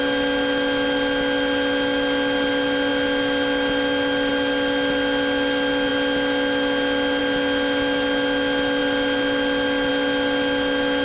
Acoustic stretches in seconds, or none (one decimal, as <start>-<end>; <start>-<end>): 0.0-11.0